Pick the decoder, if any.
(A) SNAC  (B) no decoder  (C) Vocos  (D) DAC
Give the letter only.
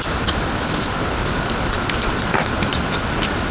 B